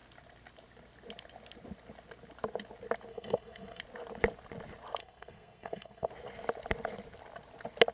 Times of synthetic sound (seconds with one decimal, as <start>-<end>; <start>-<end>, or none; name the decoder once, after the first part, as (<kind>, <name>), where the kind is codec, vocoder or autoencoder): 3.1-3.8 (codec, SNAC); 5.0-6.1